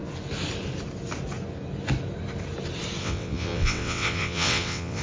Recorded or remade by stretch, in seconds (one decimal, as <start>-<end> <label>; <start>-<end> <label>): 0.0-3.0 recorded; 3.0-5.0 remade